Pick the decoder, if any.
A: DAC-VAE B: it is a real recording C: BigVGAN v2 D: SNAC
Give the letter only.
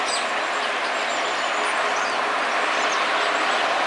B